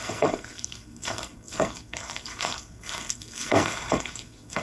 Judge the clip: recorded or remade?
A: remade